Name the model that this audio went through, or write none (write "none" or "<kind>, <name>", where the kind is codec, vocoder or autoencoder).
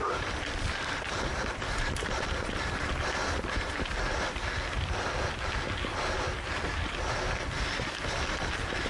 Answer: none